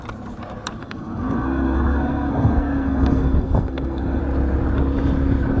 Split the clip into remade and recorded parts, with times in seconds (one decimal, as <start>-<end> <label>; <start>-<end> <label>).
0.0-0.8 recorded; 0.8-4.2 remade; 4.2-5.6 recorded